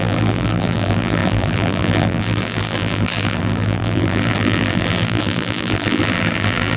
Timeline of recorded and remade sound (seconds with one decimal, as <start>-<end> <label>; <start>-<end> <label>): 0.0-6.8 remade